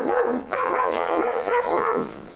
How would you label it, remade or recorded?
remade